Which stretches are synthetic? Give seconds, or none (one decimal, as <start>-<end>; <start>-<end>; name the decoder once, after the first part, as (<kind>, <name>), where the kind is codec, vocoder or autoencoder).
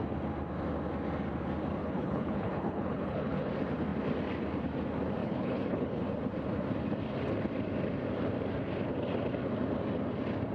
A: 1.8-3.5 (codec, HILCodec); 5.2-6.0